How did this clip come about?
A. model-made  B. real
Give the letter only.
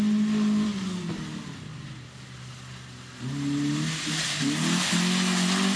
B